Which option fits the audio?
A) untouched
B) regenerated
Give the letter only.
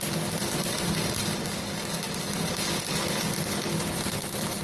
A